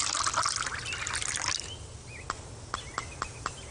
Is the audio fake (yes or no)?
no